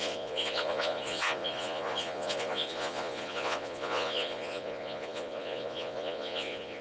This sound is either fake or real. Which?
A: fake